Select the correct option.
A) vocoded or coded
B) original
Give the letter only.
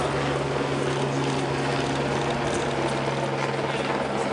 B